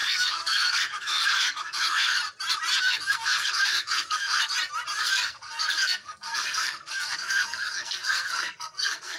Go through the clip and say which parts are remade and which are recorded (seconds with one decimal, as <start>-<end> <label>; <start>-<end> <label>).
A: 0.0-2.2 remade; 2.2-2.8 recorded; 2.8-4.5 remade; 4.5-5.0 recorded; 5.0-9.2 remade